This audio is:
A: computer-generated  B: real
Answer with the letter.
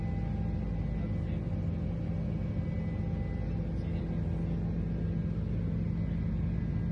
B